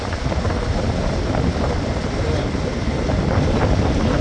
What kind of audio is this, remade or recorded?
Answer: recorded